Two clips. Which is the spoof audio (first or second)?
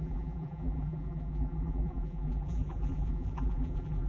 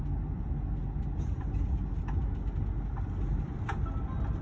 first